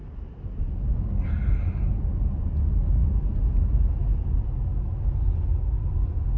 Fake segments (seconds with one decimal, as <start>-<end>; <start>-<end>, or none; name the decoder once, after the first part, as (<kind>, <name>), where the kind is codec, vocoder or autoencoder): none